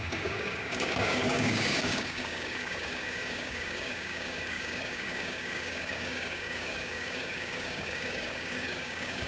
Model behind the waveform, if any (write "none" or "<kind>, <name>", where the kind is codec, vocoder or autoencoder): codec, DAC